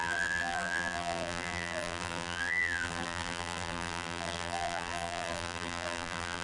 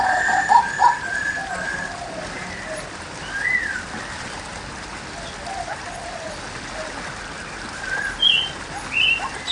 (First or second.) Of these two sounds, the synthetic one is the first